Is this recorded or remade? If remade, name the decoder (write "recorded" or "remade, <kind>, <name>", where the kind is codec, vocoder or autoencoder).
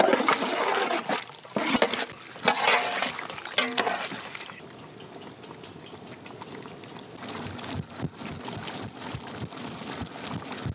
recorded